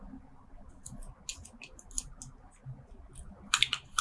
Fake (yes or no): no